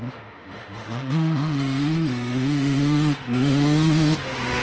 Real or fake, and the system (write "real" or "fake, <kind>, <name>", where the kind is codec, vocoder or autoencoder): fake, autoencoder, DAC-VAE